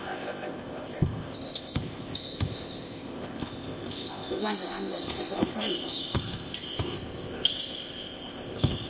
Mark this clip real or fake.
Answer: fake